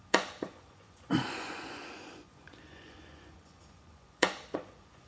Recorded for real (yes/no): no